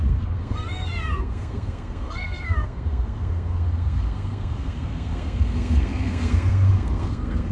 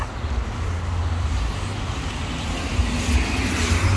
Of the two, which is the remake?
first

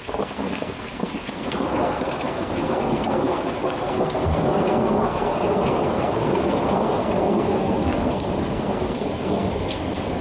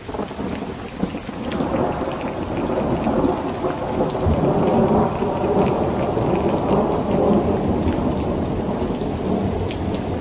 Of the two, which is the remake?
first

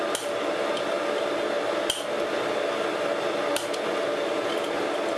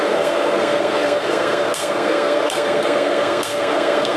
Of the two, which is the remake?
second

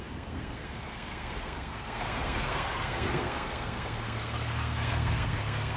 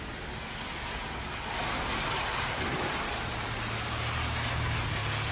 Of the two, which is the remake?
first